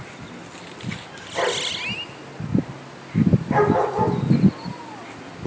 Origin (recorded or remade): recorded